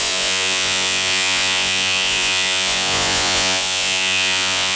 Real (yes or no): no